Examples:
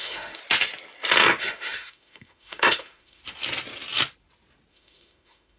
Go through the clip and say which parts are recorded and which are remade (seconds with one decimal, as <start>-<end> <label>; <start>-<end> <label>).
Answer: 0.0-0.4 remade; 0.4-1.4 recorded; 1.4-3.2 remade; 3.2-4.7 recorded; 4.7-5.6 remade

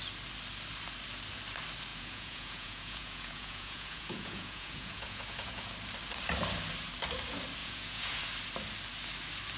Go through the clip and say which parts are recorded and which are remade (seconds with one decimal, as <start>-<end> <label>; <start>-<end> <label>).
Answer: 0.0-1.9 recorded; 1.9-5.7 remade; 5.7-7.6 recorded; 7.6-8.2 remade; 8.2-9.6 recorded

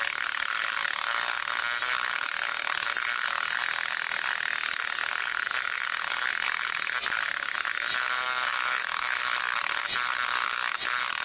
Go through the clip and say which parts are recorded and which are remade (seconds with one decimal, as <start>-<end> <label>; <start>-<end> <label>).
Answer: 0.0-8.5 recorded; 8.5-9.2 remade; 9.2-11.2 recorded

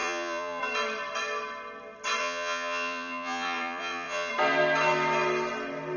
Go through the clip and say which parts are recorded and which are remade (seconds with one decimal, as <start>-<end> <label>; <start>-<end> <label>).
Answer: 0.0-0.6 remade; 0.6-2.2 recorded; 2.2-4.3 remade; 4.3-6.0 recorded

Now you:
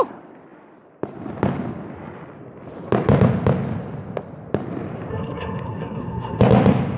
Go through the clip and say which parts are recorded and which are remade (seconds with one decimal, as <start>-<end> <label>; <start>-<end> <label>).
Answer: 0.0-5.1 recorded; 5.1-6.4 remade; 6.4-7.0 recorded

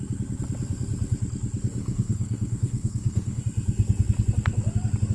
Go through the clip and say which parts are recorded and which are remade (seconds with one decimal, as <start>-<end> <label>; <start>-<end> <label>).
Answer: 0.0-1.8 recorded; 1.8-3.4 remade; 3.4-5.1 recorded